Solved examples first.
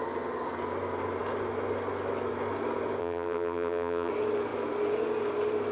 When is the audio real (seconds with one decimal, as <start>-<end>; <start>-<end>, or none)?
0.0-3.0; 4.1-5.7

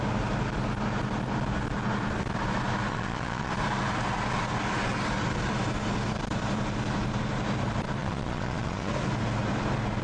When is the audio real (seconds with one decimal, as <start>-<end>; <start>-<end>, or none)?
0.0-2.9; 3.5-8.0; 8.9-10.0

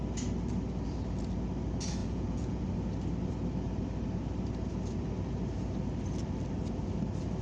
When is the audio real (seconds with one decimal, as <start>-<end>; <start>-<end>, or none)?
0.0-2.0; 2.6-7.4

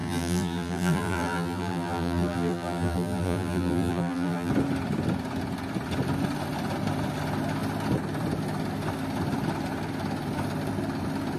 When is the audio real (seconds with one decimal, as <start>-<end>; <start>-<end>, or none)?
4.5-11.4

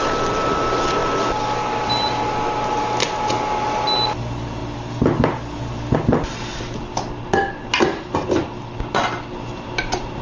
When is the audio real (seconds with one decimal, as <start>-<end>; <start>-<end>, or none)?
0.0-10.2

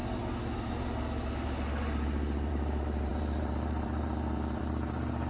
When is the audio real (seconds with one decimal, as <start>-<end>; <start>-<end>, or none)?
0.0-2.5